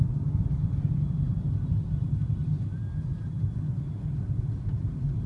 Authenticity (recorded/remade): recorded